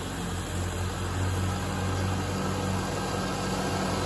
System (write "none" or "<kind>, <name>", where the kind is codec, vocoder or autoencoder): none